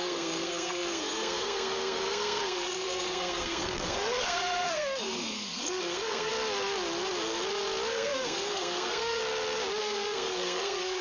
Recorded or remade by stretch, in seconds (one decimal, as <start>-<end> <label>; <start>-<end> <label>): 0.0-6.3 remade; 6.3-7.9 recorded; 7.9-9.2 remade; 9.2-9.8 recorded; 9.8-11.0 remade